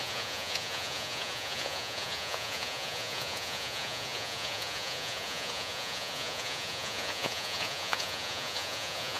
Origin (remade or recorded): remade